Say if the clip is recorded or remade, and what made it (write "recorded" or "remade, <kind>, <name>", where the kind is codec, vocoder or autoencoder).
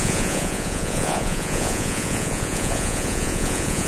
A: remade, vocoder, Vocos